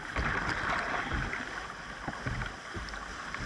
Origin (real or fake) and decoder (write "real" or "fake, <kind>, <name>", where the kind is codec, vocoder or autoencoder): real